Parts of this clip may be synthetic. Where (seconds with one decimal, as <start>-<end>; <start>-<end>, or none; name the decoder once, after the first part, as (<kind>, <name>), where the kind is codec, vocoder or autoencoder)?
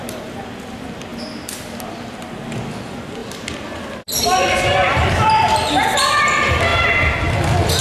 3.2-5.7 (vocoder, BigVGAN v2); 6.7-7.8